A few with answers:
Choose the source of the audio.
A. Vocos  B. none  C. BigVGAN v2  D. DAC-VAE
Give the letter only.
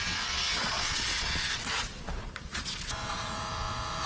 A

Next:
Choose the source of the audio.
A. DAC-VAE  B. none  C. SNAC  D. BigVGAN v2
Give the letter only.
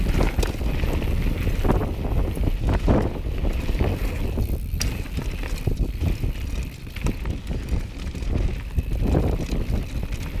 B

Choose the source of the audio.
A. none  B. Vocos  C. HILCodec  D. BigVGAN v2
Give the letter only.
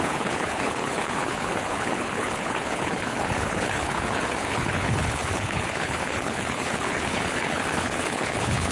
C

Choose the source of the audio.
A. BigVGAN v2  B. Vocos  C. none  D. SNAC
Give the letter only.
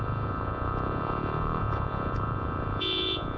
B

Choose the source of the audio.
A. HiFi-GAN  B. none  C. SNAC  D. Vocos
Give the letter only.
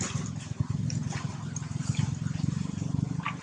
B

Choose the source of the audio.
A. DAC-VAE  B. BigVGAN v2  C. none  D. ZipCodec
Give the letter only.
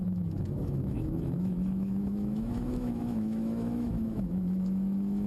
A